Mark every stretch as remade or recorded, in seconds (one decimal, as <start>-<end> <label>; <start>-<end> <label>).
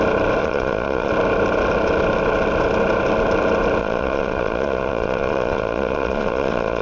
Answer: 0.0-0.4 recorded; 0.4-1.1 remade; 1.1-3.8 recorded; 3.8-6.8 remade